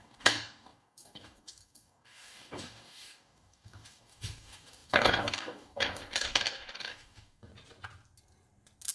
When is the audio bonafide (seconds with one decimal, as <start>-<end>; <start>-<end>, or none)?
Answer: 7.5-8.9